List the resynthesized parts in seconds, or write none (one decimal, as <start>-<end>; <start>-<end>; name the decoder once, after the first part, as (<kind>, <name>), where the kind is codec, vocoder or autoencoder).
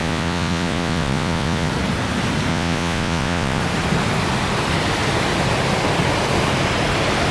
0.0-1.7 (vocoder, Vocos); 2.5-3.6